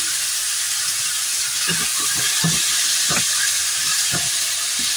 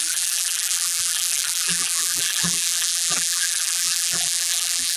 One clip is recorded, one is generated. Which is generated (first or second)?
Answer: second